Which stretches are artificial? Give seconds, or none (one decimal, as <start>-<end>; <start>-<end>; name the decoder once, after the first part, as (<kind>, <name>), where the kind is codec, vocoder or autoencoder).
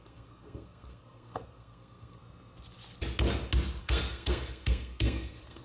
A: 0.0-2.2 (codec, SNAC); 3.8-5.6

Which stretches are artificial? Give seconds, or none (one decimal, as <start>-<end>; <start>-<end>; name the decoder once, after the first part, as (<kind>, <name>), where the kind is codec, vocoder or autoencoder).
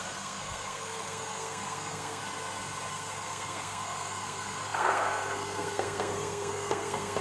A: 0.0-2.2 (codec, SNAC); 2.9-7.2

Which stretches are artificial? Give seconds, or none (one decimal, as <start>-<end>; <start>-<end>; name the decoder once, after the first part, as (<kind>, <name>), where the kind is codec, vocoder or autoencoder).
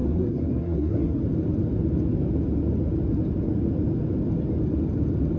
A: 0.0-1.2 (codec, SNAC)